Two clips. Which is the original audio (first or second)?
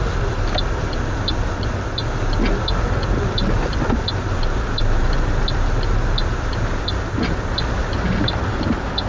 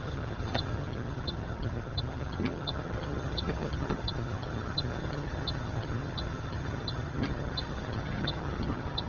first